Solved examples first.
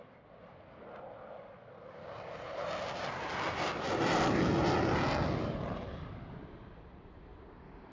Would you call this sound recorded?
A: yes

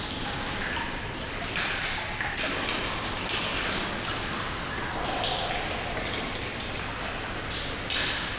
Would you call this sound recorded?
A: yes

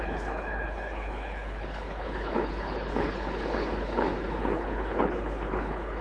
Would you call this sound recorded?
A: no